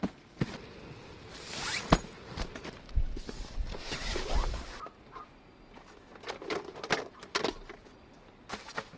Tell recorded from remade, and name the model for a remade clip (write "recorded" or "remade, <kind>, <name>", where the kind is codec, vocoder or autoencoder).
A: recorded